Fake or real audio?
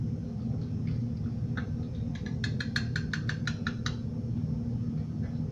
real